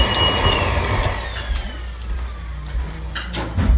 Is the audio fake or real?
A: real